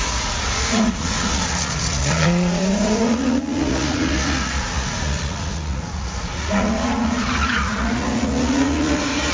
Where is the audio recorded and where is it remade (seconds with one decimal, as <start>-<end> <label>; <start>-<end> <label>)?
0.0-9.3 remade